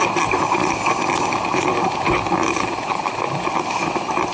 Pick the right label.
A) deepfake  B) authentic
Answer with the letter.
B